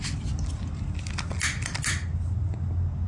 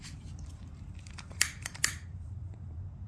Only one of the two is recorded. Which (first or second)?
first